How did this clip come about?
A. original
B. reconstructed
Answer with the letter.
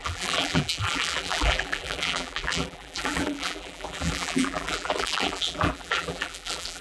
B